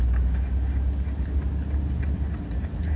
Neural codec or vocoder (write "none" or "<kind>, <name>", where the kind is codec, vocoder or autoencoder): none